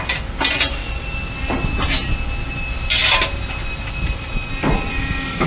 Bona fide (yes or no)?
yes